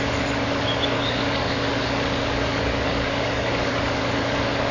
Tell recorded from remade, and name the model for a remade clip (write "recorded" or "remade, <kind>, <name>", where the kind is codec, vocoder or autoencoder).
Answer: remade, codec, DAC